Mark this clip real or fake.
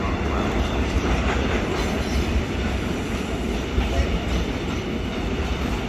fake